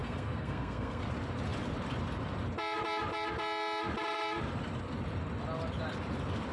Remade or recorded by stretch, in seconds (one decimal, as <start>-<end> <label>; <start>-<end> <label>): 0.0-1.0 remade; 1.0-6.5 recorded

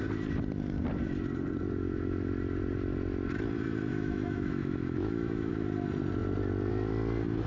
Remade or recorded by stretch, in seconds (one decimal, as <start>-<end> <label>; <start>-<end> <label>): 0.0-3.9 recorded; 3.9-5.5 remade; 5.5-7.5 recorded

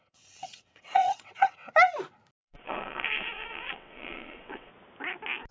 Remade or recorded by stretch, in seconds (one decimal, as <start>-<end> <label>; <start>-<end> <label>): 0.0-1.7 remade; 1.7-2.4 recorded; 2.4-4.7 remade; 4.7-5.5 recorded

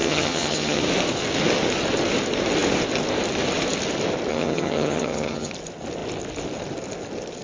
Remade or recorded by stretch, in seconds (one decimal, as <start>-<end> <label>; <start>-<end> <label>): 0.0-0.8 remade; 0.8-4.3 recorded; 4.3-5.5 remade; 5.5-7.4 recorded